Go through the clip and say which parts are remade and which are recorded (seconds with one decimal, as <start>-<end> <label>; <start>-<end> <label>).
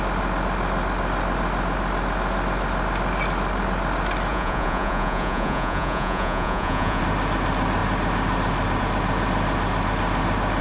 0.0-4.3 recorded; 4.3-7.0 remade; 7.0-10.6 recorded